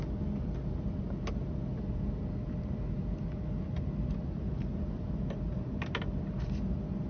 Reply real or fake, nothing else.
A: real